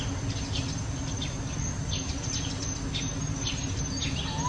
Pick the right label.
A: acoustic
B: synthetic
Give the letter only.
A